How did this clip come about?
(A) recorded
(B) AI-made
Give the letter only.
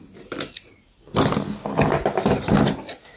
A